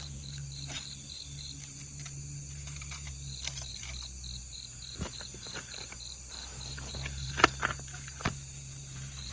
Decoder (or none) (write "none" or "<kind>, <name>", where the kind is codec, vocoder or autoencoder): vocoder, BigVGAN v2